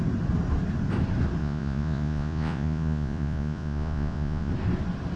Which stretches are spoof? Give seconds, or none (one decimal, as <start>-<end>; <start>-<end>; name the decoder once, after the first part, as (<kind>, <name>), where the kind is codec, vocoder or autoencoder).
1.4-4.5 (vocoder, Vocos)